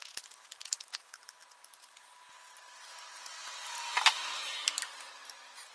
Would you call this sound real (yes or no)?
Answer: yes